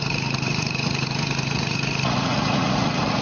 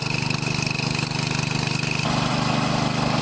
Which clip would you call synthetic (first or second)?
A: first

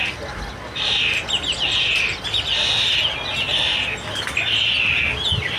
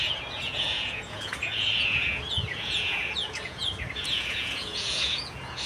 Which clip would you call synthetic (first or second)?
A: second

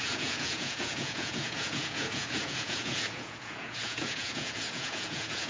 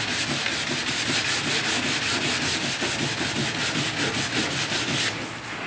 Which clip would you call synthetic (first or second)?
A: first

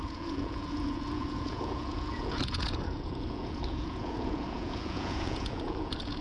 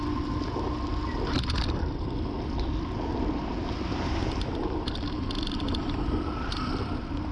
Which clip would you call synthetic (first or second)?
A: first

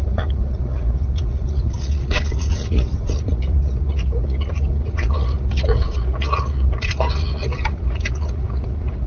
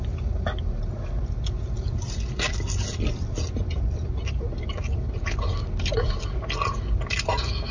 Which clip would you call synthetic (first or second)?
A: first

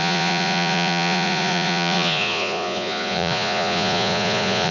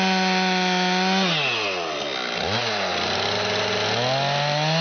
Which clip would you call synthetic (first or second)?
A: first